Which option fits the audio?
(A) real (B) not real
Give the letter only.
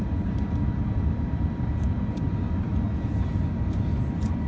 A